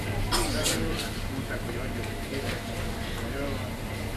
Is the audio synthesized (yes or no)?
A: no